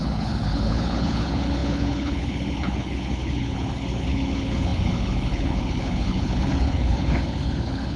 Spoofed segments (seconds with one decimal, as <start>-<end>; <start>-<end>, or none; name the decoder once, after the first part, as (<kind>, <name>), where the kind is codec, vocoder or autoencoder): 0.0-8.0 (codec, HILCodec)